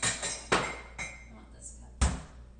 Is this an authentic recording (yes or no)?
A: yes